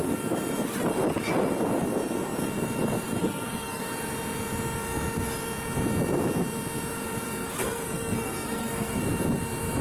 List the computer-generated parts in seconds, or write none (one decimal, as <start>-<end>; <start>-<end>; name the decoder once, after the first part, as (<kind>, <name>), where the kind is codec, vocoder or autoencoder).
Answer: 3.2-3.8 (codec, SNAC); 7.6-9.0